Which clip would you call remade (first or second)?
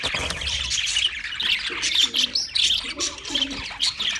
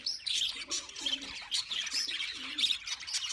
second